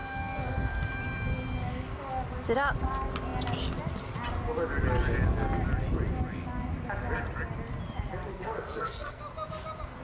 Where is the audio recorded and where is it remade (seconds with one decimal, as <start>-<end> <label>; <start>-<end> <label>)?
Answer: 0.0-0.9 remade; 0.9-8.3 recorded; 8.3-9.2 remade; 9.2-10.0 recorded